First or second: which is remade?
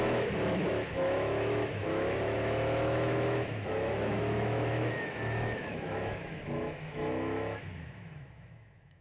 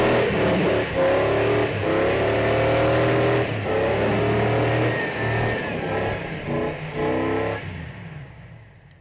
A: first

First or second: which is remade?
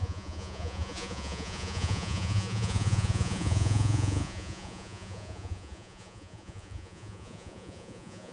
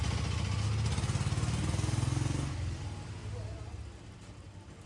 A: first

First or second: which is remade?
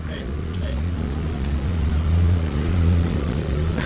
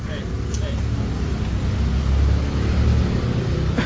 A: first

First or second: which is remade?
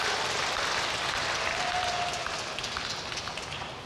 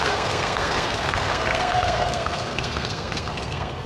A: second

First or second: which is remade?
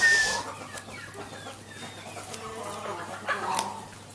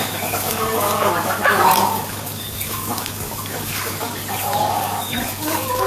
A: second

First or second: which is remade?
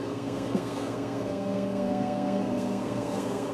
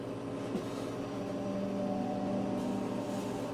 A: first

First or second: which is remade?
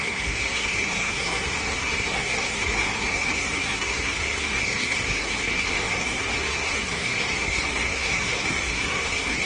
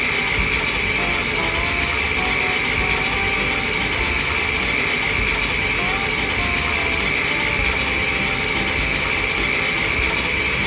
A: first